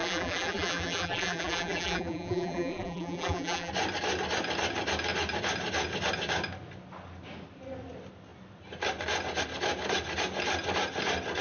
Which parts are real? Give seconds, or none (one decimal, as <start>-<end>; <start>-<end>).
3.7-11.4